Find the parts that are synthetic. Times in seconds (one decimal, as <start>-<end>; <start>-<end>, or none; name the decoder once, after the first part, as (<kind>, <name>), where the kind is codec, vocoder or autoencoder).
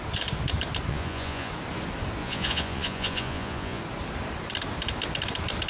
0.9-1.5 (vocoder, Vocos); 2.2-3.8